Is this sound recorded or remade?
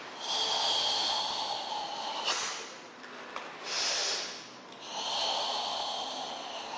recorded